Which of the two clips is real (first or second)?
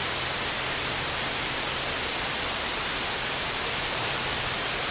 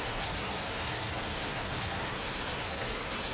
first